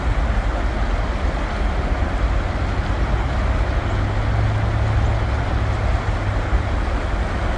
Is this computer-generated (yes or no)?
no